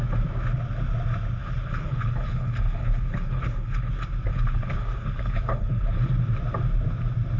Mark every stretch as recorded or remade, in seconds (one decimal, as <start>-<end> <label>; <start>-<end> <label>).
0.0-1.4 recorded; 1.4-3.9 remade; 3.9-4.3 recorded; 4.3-6.0 remade; 6.0-7.4 recorded